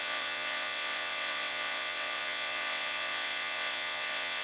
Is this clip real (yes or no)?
no